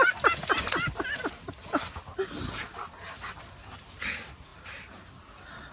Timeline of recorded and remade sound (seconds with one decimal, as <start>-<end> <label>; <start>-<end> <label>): 0.0-5.7 recorded